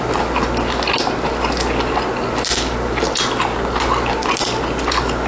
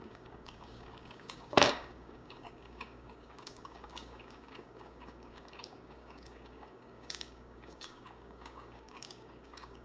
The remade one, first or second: second